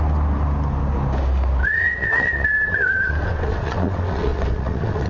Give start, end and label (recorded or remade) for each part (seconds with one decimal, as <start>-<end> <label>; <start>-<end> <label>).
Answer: 0.0-1.6 recorded; 1.6-5.1 remade